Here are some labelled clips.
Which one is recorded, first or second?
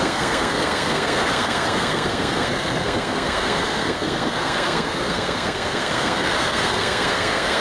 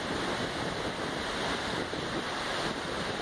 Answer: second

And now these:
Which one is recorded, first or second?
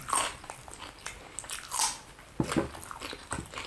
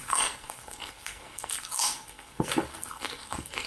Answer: first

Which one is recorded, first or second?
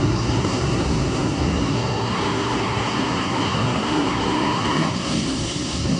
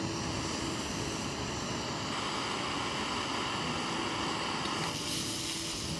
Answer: second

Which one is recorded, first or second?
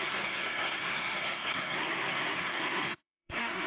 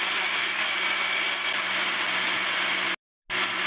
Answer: second